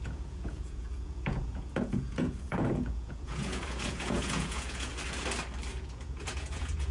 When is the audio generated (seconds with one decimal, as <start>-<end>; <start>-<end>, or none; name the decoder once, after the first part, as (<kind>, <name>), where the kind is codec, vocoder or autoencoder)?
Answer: 0.0-4.9 (vocoder, Vocos); 5.7-6.9